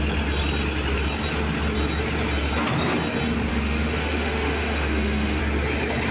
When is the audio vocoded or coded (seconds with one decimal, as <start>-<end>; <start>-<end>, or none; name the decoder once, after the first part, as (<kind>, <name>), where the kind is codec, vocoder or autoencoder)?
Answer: 3.5-5.4 (autoencoder, DAC-VAE)